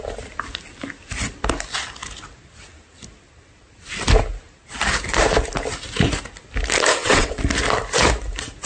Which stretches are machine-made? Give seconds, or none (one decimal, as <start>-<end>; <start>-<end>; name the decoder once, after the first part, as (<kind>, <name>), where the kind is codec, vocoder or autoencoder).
6.9-7.4 (vocoder, WaveNeXt)